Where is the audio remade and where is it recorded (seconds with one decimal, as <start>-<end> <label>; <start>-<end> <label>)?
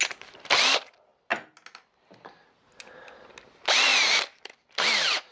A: 0.0-5.3 recorded